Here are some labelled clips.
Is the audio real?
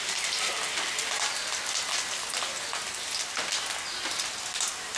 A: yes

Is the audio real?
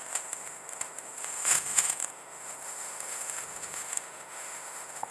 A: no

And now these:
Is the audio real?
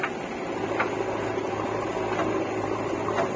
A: yes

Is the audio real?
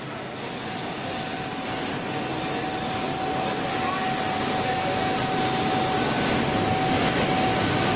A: yes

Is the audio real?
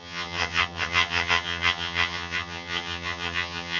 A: no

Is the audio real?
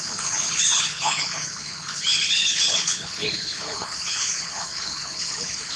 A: no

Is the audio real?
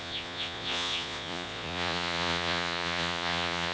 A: no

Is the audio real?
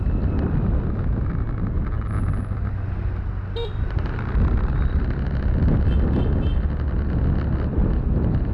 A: yes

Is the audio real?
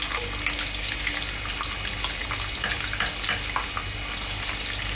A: yes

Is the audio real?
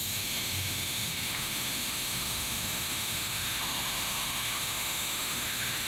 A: no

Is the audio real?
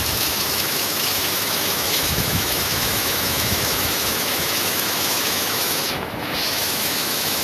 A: no